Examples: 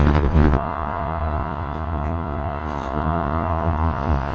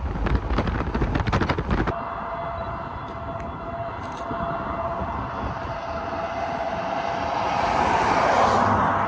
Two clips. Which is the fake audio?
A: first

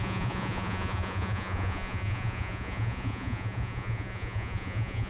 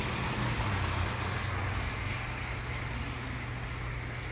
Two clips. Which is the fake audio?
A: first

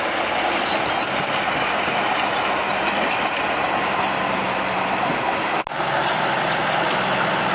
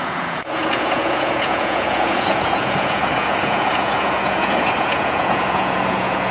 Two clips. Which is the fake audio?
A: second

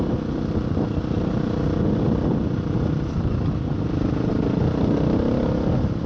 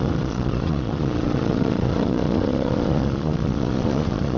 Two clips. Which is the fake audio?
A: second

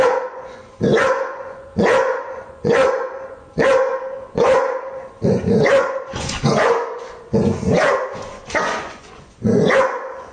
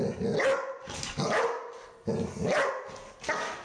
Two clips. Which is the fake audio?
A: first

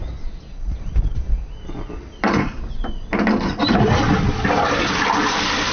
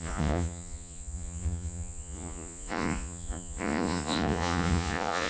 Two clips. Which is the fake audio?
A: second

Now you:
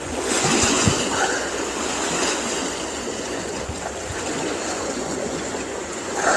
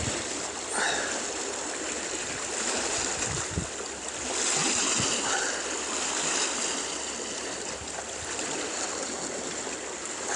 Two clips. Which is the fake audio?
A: first